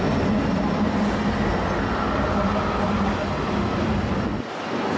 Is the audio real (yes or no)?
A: yes